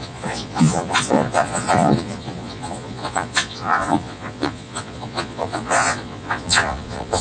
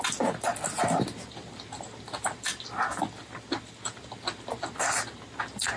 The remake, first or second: first